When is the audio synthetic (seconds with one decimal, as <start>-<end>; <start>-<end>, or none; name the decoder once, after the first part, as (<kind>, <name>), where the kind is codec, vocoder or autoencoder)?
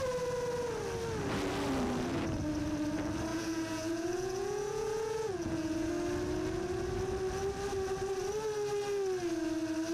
3.3-5.9 (vocoder, Vocos)